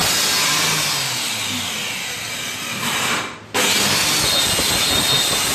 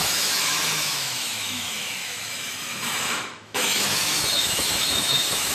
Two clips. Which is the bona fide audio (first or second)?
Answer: first